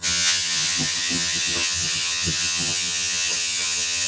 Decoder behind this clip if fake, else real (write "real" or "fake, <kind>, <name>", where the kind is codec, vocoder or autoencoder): fake, vocoder, HiFi-GAN